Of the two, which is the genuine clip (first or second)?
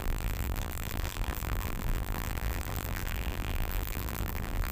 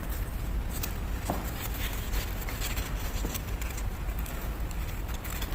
second